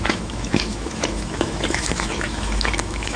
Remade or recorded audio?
remade